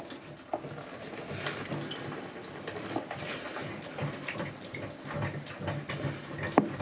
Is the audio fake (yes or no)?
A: no